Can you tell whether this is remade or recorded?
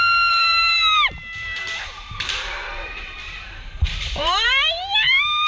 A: remade